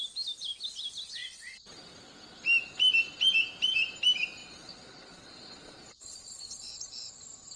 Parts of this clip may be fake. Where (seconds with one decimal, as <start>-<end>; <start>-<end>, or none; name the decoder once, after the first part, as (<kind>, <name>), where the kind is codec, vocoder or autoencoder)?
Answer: 4.4-6.7 (vocoder, Vocos)

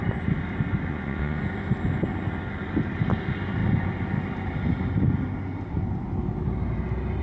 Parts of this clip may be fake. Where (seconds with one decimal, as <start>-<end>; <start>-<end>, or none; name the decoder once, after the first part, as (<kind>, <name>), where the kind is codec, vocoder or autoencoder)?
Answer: 0.9-1.4 (vocoder, Vocos)